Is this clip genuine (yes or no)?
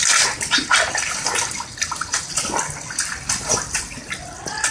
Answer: yes